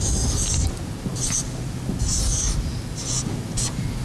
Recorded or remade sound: recorded